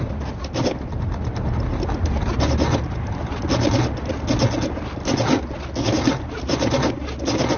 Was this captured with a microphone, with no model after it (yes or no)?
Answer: yes